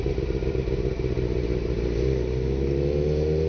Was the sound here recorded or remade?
recorded